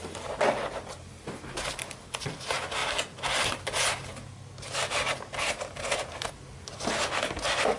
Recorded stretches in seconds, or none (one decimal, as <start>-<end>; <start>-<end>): 0.0-7.8

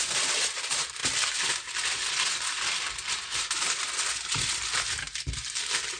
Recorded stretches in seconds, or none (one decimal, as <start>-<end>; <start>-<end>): 0.0-6.0